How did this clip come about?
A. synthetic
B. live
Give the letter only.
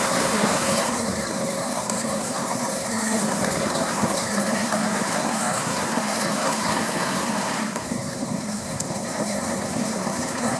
A